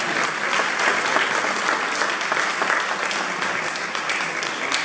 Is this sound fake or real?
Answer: real